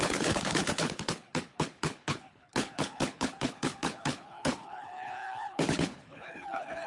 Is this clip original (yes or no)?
no